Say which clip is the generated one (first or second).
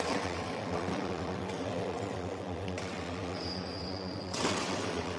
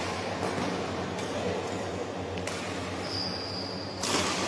first